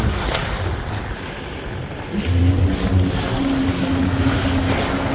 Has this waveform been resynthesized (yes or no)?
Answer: no